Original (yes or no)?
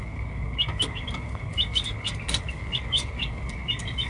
no